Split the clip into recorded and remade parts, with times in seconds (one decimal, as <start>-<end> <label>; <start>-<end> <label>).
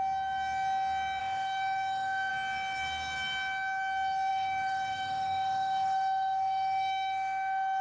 0.0-1.2 recorded; 1.2-2.3 remade; 2.3-4.3 recorded; 4.3-7.8 remade